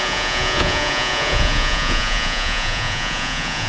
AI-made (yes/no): yes